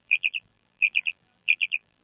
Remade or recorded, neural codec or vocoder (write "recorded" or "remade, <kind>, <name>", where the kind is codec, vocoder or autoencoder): remade, vocoder, BigVGAN v2